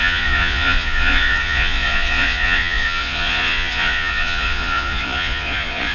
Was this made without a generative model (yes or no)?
no